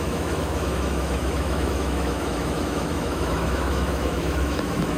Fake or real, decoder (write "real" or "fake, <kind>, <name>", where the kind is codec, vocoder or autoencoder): fake, autoencoder, DAC-VAE